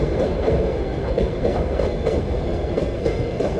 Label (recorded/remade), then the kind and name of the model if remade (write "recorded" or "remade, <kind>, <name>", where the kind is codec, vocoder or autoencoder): remade, codec, SNAC